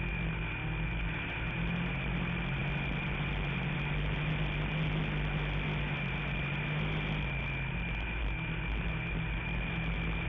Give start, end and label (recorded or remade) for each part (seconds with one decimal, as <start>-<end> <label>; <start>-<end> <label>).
0.0-10.3 recorded